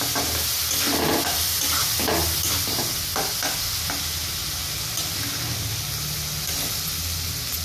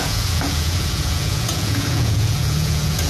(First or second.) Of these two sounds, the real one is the first